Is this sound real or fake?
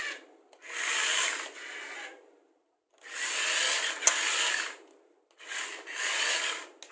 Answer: real